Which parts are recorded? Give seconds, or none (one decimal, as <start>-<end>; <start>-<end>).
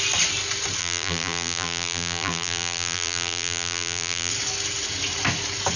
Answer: 0.0-0.8; 4.3-5.8